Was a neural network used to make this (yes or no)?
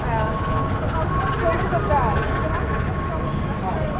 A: no